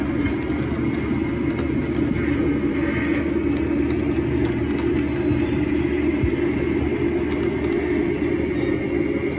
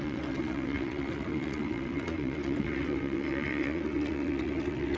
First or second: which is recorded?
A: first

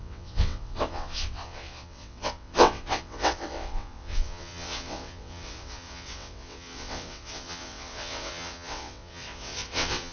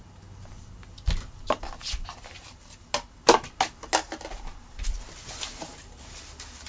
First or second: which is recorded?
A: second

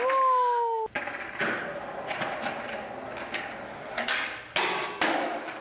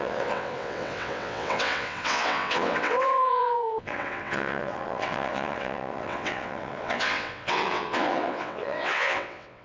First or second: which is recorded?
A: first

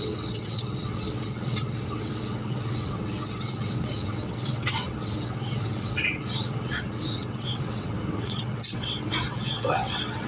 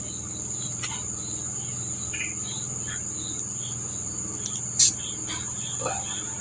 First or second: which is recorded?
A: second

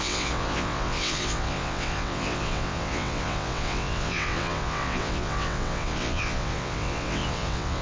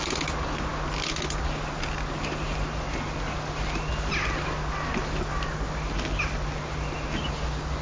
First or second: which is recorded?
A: second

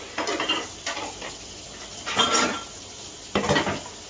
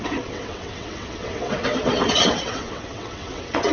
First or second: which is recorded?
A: first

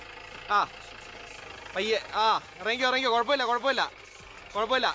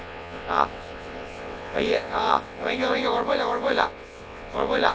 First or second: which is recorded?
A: first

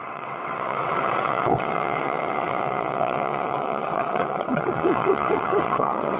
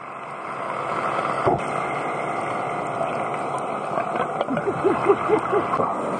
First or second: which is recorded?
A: second